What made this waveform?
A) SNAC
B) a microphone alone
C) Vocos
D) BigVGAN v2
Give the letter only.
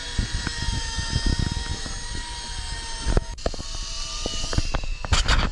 B